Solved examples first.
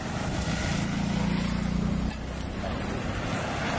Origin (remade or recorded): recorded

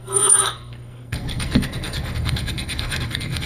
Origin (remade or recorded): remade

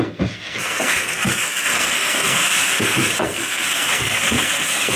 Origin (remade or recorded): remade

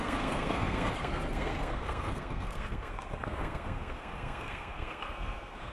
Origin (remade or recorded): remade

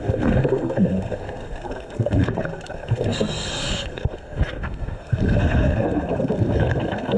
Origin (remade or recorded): remade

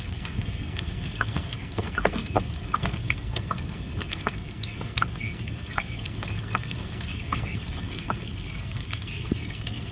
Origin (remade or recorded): remade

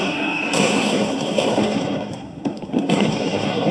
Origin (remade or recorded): remade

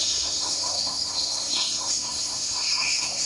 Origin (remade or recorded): remade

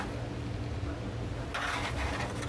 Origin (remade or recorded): recorded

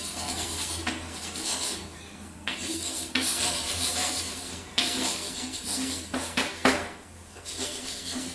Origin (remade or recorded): remade